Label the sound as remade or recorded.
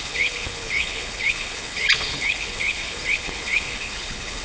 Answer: remade